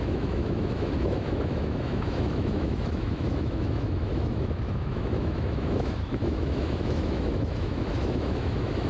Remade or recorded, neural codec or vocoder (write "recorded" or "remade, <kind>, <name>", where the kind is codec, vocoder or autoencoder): remade, autoencoder, DAC-VAE